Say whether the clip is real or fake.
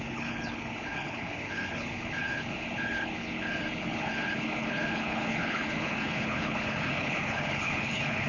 fake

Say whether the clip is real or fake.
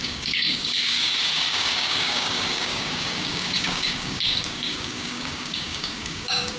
fake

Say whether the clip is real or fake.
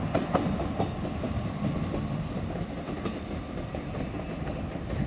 real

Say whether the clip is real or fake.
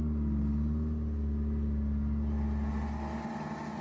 real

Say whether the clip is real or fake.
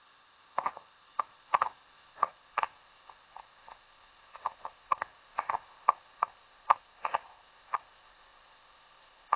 fake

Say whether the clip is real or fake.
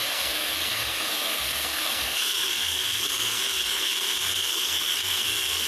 fake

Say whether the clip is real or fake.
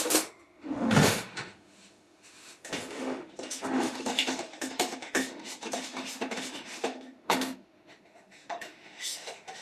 fake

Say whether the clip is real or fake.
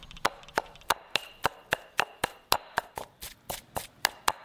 real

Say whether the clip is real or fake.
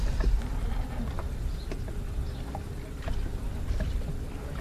real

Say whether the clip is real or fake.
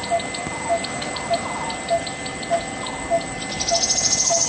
real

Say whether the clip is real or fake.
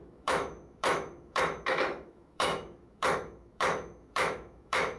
fake